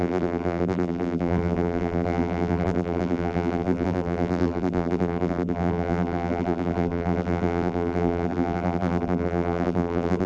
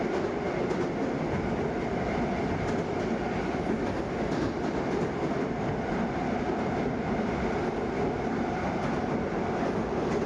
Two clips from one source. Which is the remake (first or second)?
first